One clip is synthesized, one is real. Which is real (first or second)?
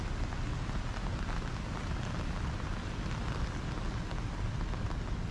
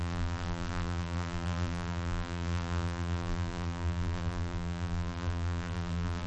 first